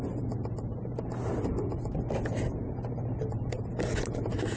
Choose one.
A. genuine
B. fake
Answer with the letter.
A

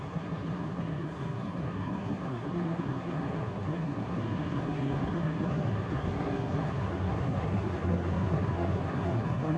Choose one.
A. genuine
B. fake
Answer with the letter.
B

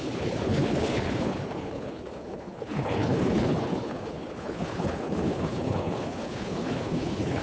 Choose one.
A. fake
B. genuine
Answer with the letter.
A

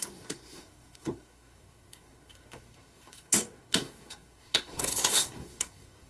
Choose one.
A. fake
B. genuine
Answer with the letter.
A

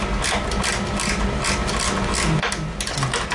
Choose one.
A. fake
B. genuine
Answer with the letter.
B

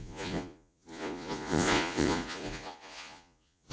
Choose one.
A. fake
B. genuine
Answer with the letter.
A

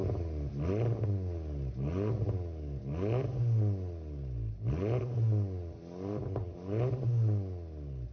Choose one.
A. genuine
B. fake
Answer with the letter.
A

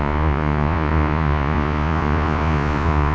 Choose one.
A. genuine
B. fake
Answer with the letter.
B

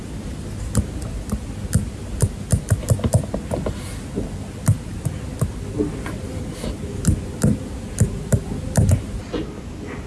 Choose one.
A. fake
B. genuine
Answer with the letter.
B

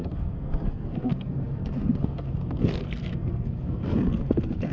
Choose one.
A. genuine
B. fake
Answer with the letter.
B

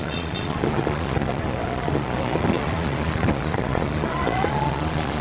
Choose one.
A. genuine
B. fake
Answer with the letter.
B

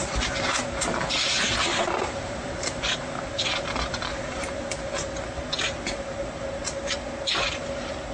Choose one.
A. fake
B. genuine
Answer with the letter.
B